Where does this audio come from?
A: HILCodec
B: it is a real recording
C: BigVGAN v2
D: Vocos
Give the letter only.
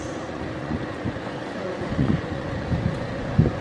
D